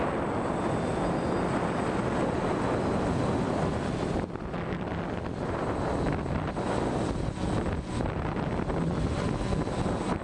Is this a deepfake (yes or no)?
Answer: no